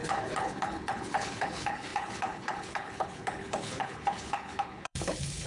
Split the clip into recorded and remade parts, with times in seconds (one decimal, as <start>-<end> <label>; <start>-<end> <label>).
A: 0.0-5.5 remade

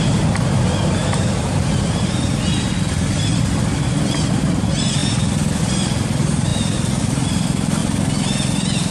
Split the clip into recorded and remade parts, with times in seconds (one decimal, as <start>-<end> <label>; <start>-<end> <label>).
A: 0.0-1.0 remade; 1.0-3.2 recorded; 3.2-6.5 remade; 6.5-7.0 recorded; 7.0-7.8 remade; 7.8-8.9 recorded

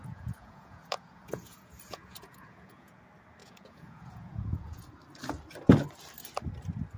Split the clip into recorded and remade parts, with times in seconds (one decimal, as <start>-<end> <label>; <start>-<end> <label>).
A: 0.0-3.0 remade; 3.0-3.4 recorded; 3.4-4.9 remade; 4.9-7.0 recorded